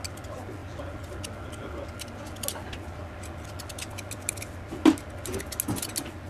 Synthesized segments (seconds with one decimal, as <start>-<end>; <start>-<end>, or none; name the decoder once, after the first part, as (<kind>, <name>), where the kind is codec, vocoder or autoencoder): none